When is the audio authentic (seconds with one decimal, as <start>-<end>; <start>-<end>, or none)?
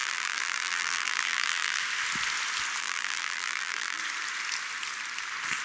1.8-2.8; 4.0-5.6